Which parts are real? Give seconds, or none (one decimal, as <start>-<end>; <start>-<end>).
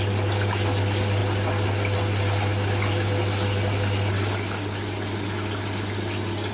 0.0-6.5